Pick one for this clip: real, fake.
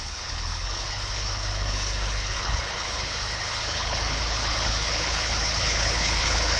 fake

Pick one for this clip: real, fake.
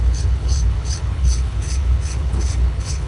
fake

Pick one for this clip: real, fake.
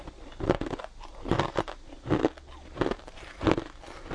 real